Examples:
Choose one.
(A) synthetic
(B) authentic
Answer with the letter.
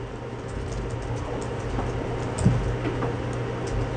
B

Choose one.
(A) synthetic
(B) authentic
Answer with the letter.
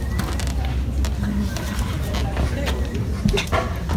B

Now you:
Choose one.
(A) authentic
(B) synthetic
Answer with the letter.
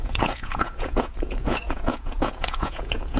B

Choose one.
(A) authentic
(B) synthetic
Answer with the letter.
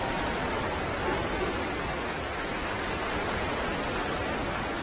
A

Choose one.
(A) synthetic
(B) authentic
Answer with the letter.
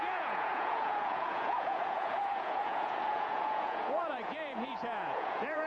A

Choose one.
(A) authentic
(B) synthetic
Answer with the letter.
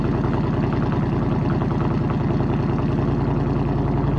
A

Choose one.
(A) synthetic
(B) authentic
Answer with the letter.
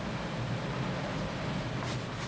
B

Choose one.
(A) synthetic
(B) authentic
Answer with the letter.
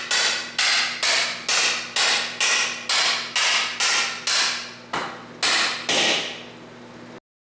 B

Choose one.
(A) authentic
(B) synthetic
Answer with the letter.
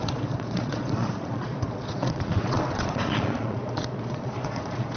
B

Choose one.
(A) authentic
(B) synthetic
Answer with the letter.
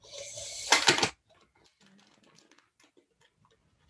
A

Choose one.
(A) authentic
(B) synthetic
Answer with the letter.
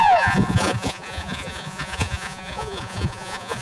B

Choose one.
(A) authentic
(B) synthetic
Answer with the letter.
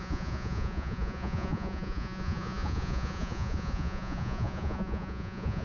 B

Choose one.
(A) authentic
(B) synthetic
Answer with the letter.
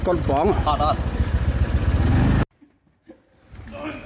A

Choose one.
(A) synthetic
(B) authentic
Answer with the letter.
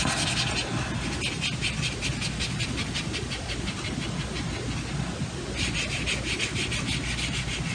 B